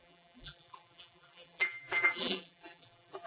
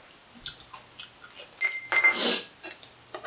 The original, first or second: second